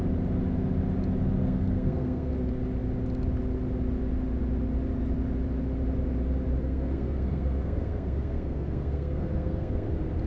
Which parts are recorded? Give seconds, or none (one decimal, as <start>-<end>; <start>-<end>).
0.0-1.4; 2.3-6.6; 9.9-10.3